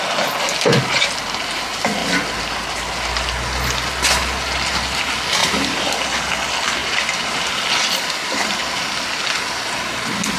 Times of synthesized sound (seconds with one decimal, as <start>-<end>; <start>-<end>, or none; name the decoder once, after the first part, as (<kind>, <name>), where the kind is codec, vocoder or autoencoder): 5.4-5.9 (vocoder, BigVGAN v2); 6.8-7.4